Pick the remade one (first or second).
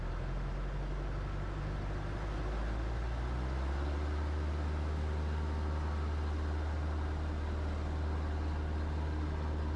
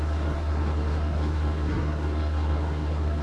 second